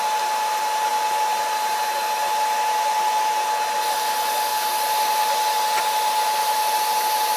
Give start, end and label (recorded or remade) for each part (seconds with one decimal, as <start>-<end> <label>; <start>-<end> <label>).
0.0-7.4 remade